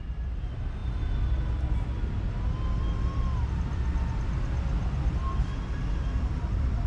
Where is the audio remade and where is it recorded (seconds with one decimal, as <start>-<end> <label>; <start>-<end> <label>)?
0.0-6.9 recorded